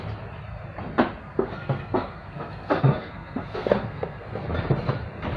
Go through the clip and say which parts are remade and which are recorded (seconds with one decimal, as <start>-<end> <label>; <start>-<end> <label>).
0.0-1.2 recorded; 1.2-4.4 remade; 4.4-5.4 recorded